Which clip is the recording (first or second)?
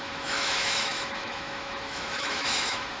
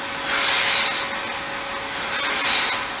second